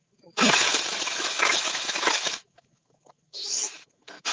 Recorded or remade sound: remade